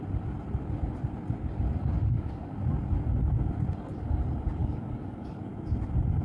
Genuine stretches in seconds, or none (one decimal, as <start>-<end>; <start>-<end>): 0.0-2.0; 2.5-4.6; 5.6-6.2